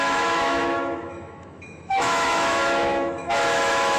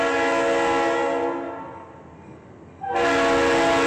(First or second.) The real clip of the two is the second